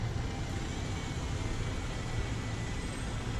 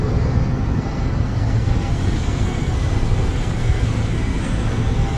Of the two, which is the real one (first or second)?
first